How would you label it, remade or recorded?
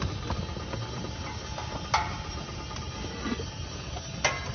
recorded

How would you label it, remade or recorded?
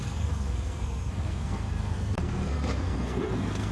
remade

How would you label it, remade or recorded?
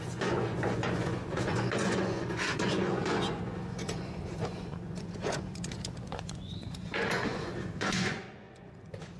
remade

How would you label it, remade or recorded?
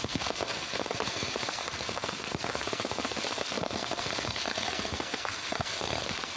remade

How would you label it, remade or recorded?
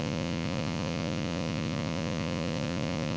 remade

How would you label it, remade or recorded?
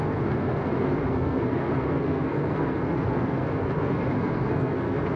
remade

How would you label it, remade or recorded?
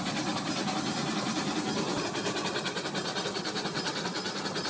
remade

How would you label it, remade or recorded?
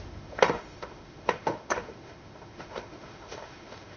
remade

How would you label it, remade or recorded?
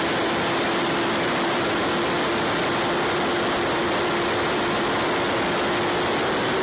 recorded